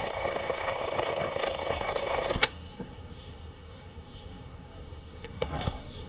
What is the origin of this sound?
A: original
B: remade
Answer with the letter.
B